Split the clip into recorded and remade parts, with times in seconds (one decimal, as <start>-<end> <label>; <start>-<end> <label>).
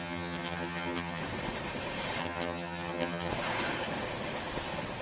0.0-1.2 remade; 1.2-2.2 recorded; 2.2-3.3 remade; 3.3-5.0 recorded